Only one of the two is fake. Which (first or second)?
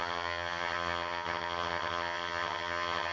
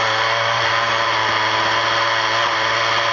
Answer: first